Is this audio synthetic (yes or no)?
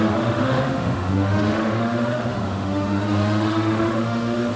yes